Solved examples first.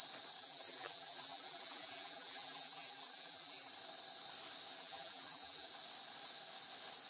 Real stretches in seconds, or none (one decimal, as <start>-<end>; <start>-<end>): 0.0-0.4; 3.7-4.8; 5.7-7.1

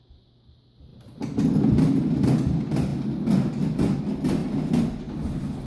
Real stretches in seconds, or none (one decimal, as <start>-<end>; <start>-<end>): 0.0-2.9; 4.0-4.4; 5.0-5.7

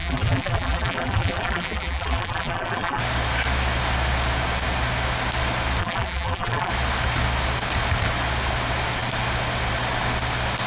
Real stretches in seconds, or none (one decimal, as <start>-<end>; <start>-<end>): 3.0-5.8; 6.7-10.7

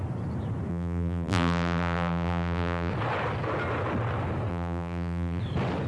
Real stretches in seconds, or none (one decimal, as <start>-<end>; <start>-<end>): 0.0-0.7; 2.9-4.5; 5.4-5.9

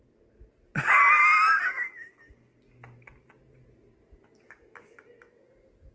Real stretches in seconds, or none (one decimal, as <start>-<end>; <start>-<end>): 0.0-1.1; 1.6-5.9

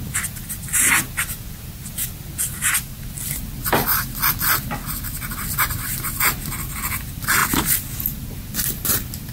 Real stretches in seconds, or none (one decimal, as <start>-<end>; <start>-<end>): 0.0-9.3